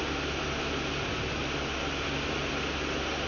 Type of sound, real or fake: real